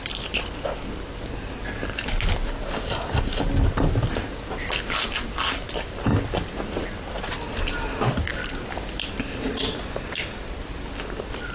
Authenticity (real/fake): real